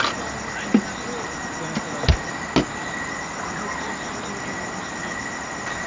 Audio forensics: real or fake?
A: real